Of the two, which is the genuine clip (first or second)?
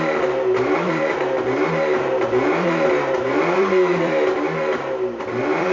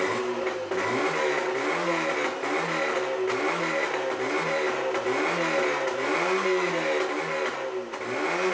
second